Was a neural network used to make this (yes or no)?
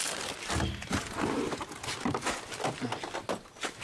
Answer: no